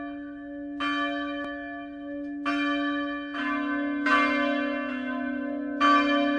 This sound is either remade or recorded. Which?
recorded